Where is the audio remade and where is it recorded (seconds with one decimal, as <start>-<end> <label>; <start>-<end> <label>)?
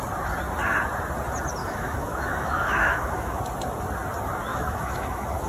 0.0-1.6 recorded; 1.6-3.4 remade; 3.4-4.5 recorded; 4.5-5.5 remade